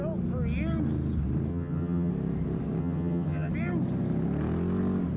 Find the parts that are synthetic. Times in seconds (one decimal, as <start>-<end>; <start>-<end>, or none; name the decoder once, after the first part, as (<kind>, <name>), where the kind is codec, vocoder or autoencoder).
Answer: 1.5-2.1 (vocoder, HiFi-GAN); 2.8-3.5

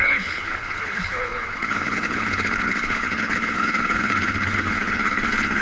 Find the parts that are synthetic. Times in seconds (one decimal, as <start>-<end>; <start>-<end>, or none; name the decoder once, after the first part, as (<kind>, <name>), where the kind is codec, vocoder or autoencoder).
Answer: 0.0-5.6 (codec, HILCodec)

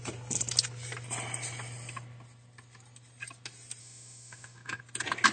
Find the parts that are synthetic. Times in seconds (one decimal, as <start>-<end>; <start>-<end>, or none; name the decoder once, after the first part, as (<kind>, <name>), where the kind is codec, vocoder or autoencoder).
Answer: 3.8-4.8 (autoencoder, DAC-VAE)